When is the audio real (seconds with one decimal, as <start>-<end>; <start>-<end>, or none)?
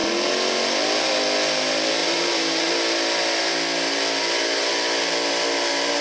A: 0.0-2.0; 2.7-6.0